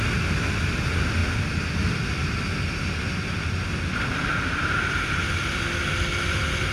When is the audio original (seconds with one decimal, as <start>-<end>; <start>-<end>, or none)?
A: 0.0-6.7